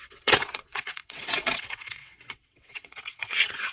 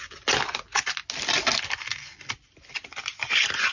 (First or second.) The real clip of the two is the second